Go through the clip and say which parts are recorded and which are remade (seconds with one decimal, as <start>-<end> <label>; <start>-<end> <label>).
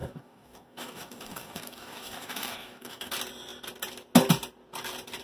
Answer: 0.0-3.1 remade; 3.1-5.2 recorded